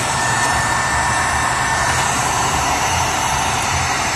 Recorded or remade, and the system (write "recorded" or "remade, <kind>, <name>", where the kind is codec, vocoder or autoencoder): remade, vocoder, BigVGAN v2